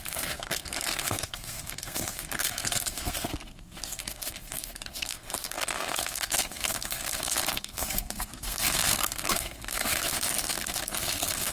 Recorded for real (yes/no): no